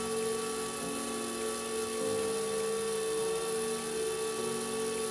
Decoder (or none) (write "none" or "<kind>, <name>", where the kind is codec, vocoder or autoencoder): none